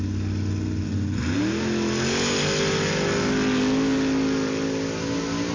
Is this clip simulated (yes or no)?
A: no